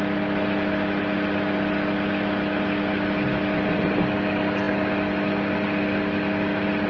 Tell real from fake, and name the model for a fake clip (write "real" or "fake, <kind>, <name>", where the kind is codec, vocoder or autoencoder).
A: real